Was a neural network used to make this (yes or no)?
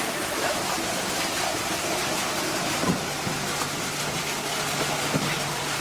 no